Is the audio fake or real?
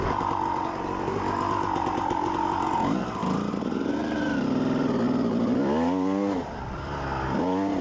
fake